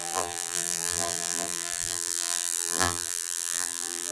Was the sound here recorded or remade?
remade